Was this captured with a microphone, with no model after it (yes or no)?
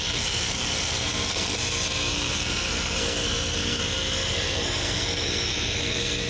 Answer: no